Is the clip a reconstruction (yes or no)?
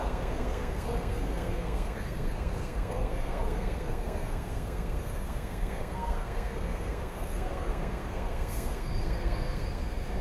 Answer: yes